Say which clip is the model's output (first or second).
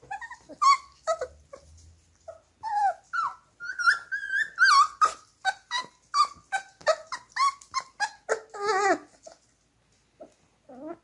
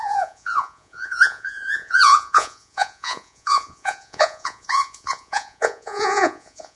second